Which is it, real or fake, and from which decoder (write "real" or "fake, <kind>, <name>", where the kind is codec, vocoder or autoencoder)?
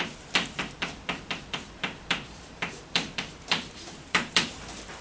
fake, vocoder, BigVGAN v2